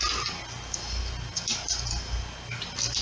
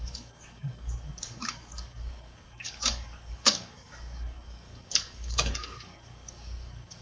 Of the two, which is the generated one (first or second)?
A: second